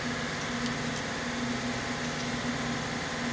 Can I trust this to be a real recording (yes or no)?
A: yes